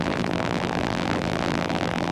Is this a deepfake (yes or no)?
yes